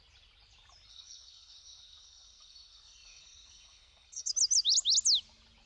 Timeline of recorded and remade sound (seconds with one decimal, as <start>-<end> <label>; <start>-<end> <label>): 0.0-0.9 recorded; 0.9-4.3 remade; 4.3-5.7 recorded